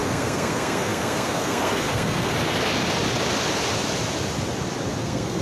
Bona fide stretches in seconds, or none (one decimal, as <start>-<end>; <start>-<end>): 2.3-5.0